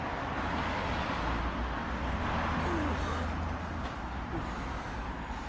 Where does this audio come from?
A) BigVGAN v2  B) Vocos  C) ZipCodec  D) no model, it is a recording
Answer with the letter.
D